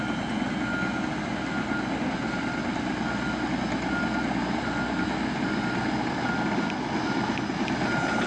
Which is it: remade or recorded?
recorded